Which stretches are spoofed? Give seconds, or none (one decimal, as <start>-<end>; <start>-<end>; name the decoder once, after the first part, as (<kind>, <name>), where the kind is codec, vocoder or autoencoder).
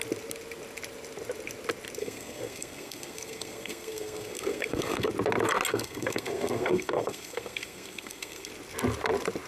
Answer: 2.0-5.1 (codec, SNAC); 5.7-8.5